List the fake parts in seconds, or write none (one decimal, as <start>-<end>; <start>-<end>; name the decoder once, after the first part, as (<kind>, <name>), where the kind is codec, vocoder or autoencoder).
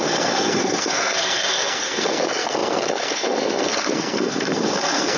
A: 0.0-5.2 (codec, SNAC)